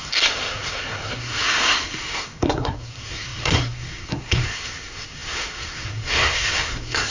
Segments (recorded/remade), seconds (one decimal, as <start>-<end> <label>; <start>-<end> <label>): 0.0-7.1 remade

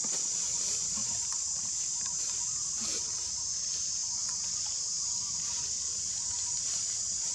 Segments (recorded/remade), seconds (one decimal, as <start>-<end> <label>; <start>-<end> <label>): 0.0-1.0 recorded; 1.0-2.2 remade; 2.2-7.3 recorded

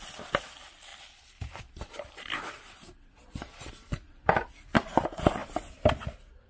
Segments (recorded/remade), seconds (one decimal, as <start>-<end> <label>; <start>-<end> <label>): 0.0-6.5 recorded

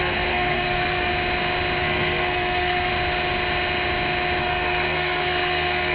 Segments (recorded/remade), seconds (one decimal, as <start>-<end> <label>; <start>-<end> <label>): 0.0-1.1 remade; 1.1-1.8 recorded; 1.8-2.9 remade; 2.9-4.4 recorded; 4.4-5.9 remade

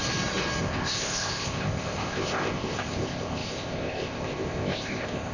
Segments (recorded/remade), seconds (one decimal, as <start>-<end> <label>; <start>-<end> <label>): 0.0-0.6 recorded; 0.6-5.3 remade

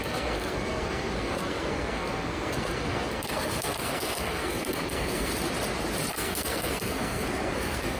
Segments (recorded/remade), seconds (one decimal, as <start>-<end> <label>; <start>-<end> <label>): 0.0-5.3 remade; 5.3-6.1 recorded; 6.1-8.0 remade

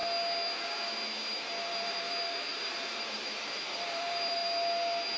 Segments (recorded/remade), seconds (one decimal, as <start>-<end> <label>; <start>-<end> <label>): 0.0-1.8 recorded; 1.8-4.4 remade; 4.4-5.2 recorded

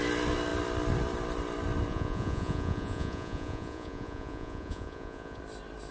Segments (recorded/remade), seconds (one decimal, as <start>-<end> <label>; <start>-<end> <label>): 0.0-1.9 recorded; 1.9-5.4 remade; 5.4-5.9 recorded